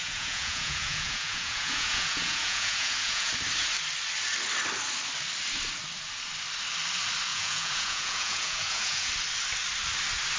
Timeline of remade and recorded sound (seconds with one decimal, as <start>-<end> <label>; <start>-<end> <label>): 0.0-3.3 remade; 3.3-7.3 recorded; 7.3-9.1 remade; 9.1-10.4 recorded